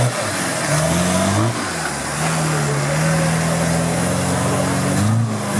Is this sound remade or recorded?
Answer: recorded